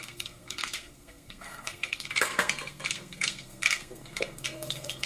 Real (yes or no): no